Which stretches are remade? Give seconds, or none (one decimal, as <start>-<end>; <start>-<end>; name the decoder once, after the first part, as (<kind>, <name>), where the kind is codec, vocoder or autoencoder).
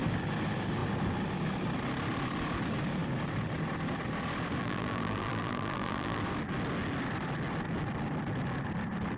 4.6-6.2 (vocoder, BigVGAN v2)